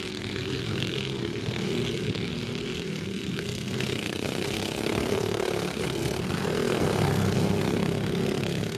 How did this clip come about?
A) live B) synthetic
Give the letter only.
B